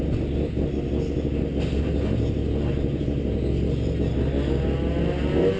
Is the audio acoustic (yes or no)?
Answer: yes